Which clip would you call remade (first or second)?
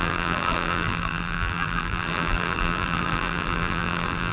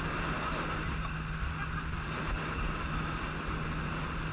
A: first